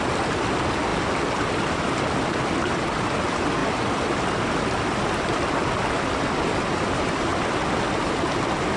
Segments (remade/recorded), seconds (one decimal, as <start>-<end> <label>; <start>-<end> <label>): 0.0-8.8 recorded

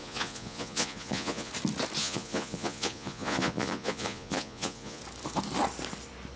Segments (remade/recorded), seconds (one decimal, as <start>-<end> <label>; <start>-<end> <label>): 0.0-1.5 remade; 1.5-2.0 recorded; 2.0-5.0 remade; 5.0-6.4 recorded

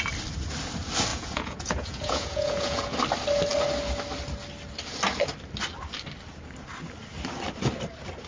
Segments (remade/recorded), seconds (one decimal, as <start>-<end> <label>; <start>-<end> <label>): 0.0-1.1 recorded; 1.1-2.9 remade; 2.9-8.3 recorded

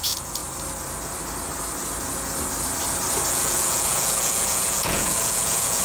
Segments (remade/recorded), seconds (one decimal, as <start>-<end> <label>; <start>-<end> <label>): 0.0-0.4 remade; 0.4-3.3 recorded; 3.3-5.8 remade

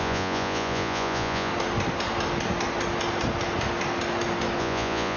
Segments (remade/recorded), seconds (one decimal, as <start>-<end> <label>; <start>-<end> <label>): 0.0-1.5 remade; 1.5-4.6 recorded; 4.6-5.2 remade

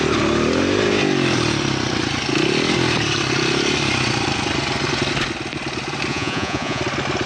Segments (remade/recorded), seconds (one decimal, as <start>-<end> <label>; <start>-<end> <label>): 0.0-6.1 recorded; 6.1-6.8 remade; 6.8-7.3 recorded